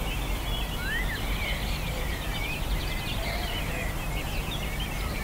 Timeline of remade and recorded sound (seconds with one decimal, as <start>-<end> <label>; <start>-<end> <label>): 0.0-0.6 recorded; 0.6-3.7 remade; 3.7-5.2 recorded